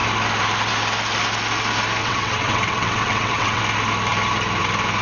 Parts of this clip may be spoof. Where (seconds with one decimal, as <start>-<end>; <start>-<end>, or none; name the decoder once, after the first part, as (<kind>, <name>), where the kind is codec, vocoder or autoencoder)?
2.0-3.6 (vocoder, WaveNeXt)